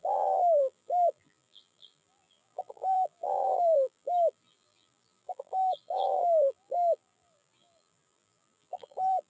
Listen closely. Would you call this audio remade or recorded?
remade